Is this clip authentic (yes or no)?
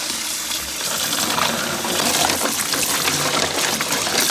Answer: yes